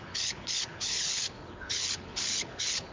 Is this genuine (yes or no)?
no